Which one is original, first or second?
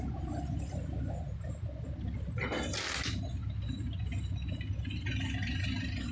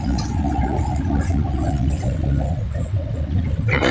first